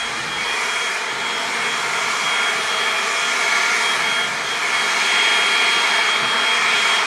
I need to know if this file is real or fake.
real